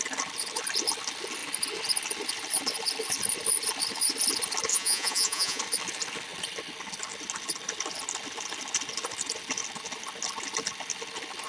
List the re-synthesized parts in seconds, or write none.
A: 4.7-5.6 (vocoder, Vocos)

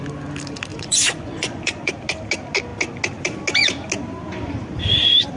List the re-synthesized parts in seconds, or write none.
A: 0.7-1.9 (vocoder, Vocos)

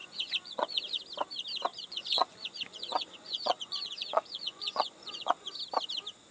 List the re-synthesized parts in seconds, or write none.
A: 0.0-1.0 (vocoder, Vocos); 1.7-5.5

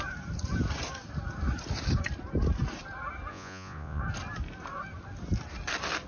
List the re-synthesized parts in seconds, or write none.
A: 3.3-4.0 (vocoder, Vocos)

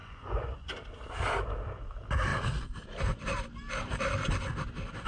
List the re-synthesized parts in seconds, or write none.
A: 0.0-0.7 (vocoder, Vocos)